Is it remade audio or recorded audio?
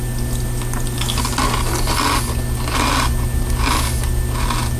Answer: recorded